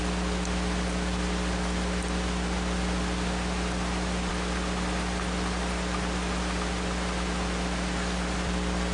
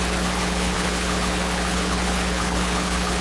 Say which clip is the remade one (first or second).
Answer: second